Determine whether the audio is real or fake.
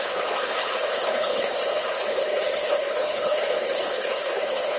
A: fake